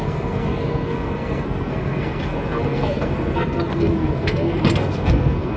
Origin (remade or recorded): remade